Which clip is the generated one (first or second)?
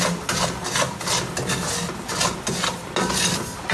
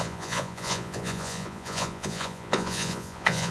second